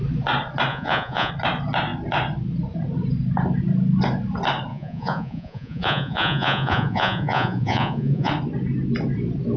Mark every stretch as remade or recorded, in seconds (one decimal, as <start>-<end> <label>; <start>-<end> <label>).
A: 0.0-0.7 recorded; 0.7-1.3 remade; 1.3-4.7 recorded; 4.7-8.3 remade; 8.3-9.6 recorded